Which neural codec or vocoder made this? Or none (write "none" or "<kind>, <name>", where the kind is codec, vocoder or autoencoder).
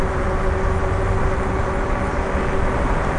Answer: none